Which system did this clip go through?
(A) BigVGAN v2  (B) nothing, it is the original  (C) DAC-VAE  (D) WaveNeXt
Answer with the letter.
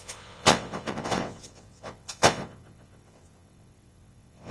D